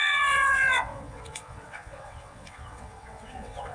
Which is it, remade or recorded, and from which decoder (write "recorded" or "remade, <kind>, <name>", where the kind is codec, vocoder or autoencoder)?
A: remade, vocoder, WaveNeXt